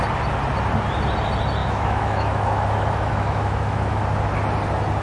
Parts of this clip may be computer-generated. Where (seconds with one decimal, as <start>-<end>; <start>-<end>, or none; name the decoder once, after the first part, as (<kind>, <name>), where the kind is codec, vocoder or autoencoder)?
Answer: 1.6-4.0 (autoencoder, DAC-VAE)